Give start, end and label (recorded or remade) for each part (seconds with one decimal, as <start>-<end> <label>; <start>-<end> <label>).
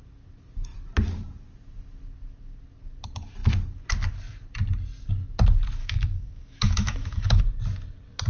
0.0-5.8 recorded; 5.8-7.4 remade; 7.4-8.3 recorded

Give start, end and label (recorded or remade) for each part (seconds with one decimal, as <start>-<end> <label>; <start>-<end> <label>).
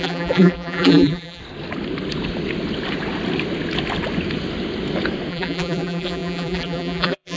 0.0-1.4 remade; 1.4-5.3 recorded; 5.3-7.4 remade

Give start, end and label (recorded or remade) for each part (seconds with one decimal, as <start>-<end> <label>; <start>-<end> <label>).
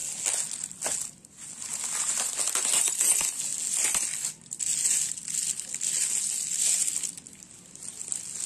0.0-8.5 recorded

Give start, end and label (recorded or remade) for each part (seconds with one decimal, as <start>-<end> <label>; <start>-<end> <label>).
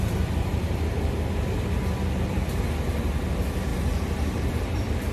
0.0-3.7 recorded; 3.7-5.1 remade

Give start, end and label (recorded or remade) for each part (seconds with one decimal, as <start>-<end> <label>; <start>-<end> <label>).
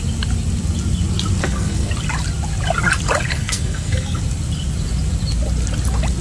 0.0-1.4 recorded; 1.4-1.9 remade; 1.9-3.3 recorded; 3.3-4.2 remade; 4.2-6.2 recorded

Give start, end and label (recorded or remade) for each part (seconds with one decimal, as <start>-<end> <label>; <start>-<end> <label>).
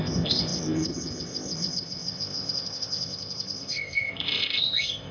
0.0-5.1 remade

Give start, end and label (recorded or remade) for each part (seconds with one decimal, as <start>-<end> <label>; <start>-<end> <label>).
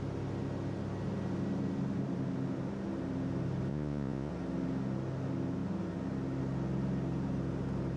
0.0-3.7 recorded; 3.7-4.3 remade; 4.3-8.0 recorded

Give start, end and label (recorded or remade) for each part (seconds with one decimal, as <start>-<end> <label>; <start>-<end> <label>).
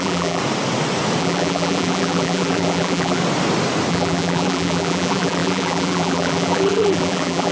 0.0-0.4 remade; 0.4-1.2 recorded; 1.2-3.2 remade; 3.2-3.9 recorded; 3.9-7.5 remade